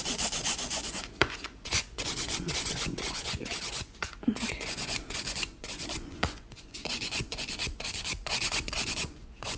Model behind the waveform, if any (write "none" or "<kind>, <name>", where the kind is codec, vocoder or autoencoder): vocoder, Vocos